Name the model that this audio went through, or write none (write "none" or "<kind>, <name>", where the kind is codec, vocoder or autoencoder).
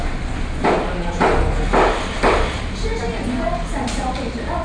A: none